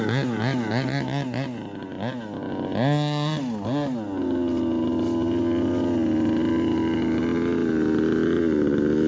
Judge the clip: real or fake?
real